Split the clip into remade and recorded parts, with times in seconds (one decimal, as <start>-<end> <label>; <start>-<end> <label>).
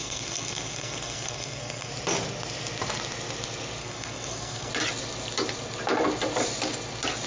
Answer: 0.0-1.9 remade; 1.9-3.8 recorded; 3.8-4.7 remade; 4.7-7.3 recorded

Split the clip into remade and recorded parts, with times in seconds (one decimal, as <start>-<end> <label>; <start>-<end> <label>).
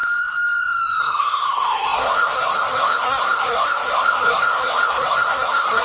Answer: 0.0-1.0 recorded; 1.0-5.8 remade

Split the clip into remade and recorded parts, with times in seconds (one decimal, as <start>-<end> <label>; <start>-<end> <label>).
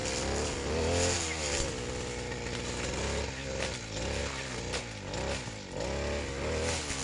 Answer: 0.0-7.0 recorded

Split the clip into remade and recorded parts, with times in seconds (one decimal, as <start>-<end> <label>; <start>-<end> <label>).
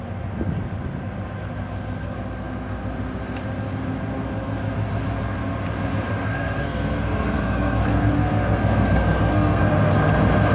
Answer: 0.0-6.1 recorded; 6.1-9.6 remade; 9.6-10.5 recorded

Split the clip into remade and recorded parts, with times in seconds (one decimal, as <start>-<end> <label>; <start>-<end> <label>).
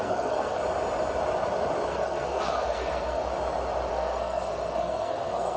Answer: 0.0-0.6 remade; 0.6-1.9 recorded; 1.9-3.2 remade; 3.2-3.9 recorded; 3.9-5.6 remade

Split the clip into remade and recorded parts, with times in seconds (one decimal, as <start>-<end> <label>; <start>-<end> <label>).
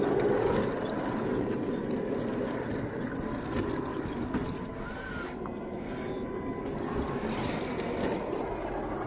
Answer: 0.0-9.1 recorded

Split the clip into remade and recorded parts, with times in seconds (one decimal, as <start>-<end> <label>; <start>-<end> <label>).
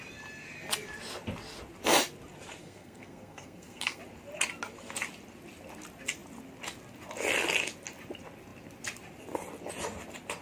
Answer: 0.0-2.6 recorded; 2.6-4.0 remade; 4.0-10.4 recorded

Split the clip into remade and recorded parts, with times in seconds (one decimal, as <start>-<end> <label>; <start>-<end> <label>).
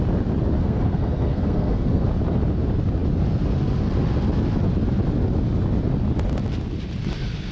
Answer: 0.0-0.6 recorded; 0.6-2.1 remade; 2.1-7.5 recorded